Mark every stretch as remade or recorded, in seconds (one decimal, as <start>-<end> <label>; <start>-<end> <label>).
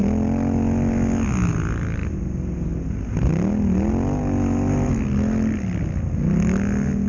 0.0-7.1 recorded